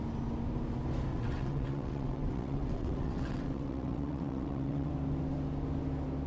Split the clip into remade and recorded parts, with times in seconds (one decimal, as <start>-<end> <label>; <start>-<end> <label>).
0.0-1.1 recorded; 1.1-4.9 remade; 4.9-6.3 recorded